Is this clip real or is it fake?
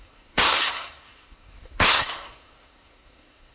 fake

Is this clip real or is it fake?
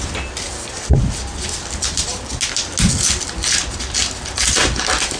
real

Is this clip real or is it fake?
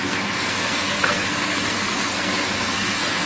fake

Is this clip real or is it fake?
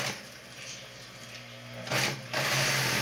real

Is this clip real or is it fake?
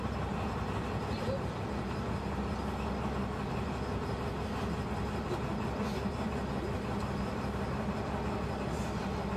real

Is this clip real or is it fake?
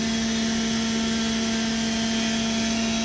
real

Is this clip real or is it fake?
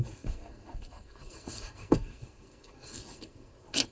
fake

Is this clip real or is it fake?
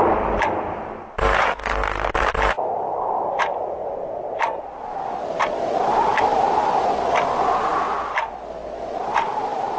real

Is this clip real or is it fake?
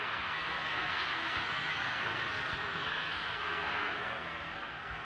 fake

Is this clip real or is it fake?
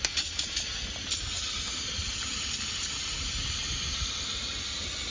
real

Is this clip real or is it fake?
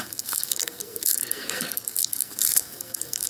fake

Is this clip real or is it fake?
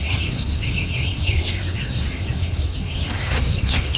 fake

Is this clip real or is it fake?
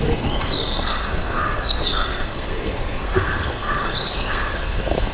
fake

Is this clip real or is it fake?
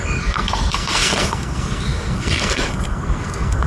fake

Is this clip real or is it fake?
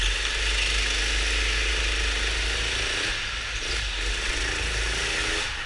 real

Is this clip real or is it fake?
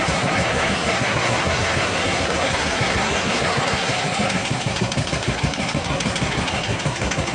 fake